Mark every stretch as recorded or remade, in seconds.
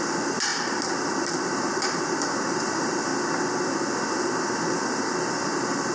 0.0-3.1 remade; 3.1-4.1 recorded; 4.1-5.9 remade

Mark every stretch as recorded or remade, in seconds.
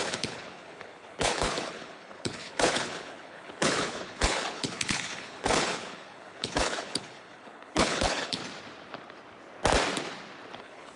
0.0-8.4 remade; 8.4-10.6 recorded; 10.6-11.0 remade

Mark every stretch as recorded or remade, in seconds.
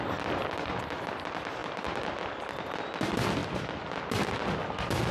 0.0-5.1 recorded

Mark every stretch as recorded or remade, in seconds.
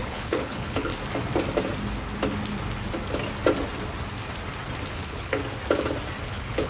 0.0-0.9 remade; 0.9-4.9 recorded; 4.9-5.4 remade; 5.4-6.2 recorded; 6.2-6.7 remade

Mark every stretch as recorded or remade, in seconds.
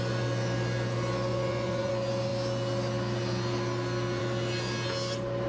0.0-1.3 recorded; 1.3-1.9 remade; 1.9-5.5 recorded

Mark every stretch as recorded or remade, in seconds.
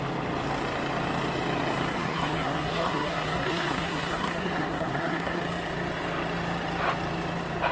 0.0-1.9 recorded; 1.9-5.4 remade; 5.4-7.7 recorded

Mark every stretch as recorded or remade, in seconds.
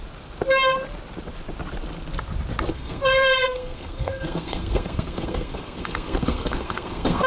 0.0-2.7 recorded; 2.7-7.3 remade